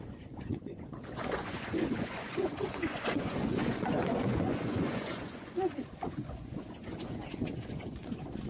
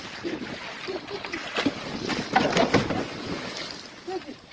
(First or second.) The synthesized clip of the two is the first